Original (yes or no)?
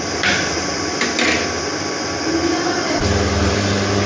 yes